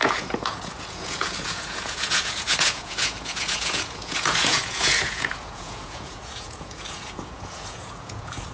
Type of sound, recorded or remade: remade